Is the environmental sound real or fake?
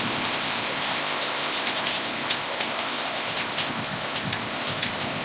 fake